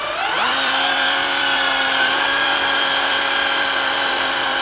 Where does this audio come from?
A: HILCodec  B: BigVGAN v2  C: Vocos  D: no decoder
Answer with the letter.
B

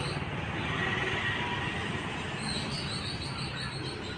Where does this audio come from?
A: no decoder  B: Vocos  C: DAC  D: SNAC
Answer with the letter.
A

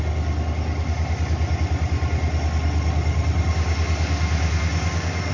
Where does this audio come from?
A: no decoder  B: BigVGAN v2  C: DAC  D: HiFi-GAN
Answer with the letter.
A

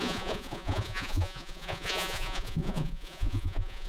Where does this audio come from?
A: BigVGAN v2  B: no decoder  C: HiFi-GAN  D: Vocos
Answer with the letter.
D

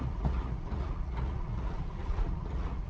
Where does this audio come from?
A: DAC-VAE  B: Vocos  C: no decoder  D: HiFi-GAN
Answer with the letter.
B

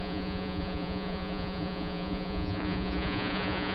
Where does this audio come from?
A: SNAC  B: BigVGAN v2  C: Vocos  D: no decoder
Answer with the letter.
C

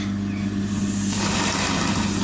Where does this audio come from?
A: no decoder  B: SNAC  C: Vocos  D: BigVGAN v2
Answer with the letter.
A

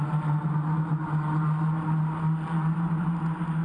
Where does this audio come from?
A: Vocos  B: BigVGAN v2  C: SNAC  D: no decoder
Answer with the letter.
D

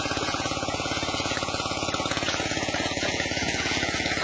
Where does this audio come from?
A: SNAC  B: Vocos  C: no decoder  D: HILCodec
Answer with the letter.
B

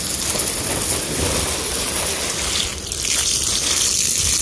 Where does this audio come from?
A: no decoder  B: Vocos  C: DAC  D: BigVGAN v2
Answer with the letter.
A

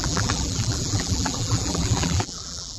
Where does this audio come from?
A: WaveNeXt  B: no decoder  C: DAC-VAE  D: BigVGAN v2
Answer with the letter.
D